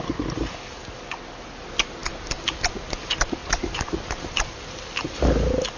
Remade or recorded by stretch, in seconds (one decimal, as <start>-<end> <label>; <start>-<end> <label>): 0.0-5.8 recorded